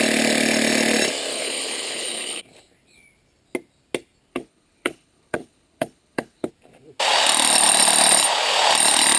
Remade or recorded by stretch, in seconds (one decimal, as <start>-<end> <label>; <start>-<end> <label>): 0.0-1.3 recorded; 1.3-2.4 remade; 2.4-4.3 recorded; 4.3-6.5 remade; 6.5-9.2 recorded